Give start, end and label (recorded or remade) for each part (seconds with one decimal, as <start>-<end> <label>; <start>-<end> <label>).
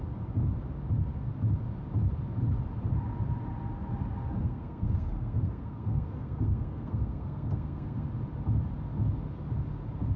0.0-4.4 recorded; 4.4-8.1 remade; 8.1-10.2 recorded